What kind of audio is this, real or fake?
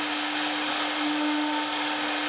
real